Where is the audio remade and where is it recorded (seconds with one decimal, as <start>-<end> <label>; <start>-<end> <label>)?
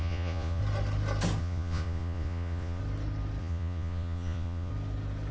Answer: 0.0-0.6 remade; 0.6-1.4 recorded; 1.4-2.8 remade; 2.8-3.4 recorded; 3.4-4.7 remade; 4.7-5.3 recorded